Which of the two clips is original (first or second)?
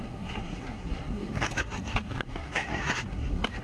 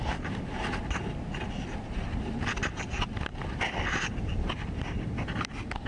second